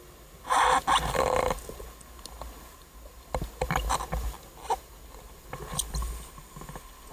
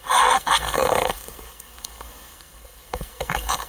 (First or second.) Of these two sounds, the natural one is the first